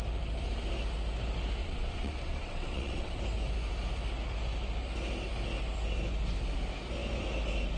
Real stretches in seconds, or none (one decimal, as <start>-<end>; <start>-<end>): 0.0-1.6; 3.2-7.8